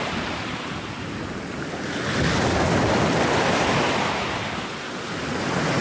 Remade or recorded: recorded